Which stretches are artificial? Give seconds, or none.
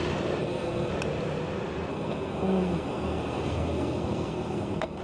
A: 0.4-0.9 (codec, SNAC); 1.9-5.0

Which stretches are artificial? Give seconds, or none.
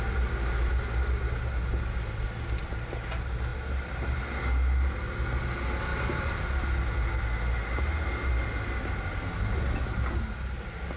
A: 3.5-4.2 (vocoder, BigVGAN v2); 5.9-6.4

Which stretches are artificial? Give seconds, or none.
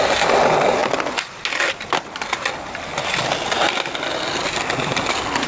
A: none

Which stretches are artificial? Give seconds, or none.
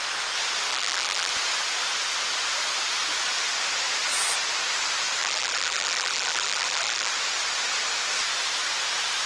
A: 0.7-1.3 (vocoder, BigVGAN v2); 5.2-7.1